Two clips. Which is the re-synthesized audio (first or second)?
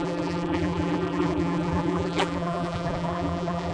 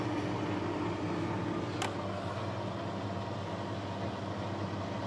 first